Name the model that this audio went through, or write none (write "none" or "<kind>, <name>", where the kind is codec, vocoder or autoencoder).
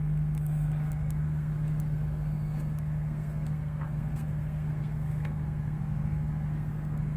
codec, SNAC